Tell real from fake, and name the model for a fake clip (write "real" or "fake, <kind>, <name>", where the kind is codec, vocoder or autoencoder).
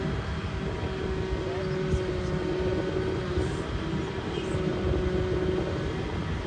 real